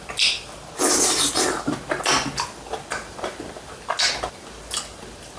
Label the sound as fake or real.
real